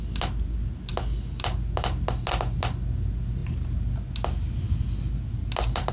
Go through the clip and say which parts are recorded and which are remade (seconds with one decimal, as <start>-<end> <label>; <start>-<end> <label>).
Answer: 0.0-5.9 recorded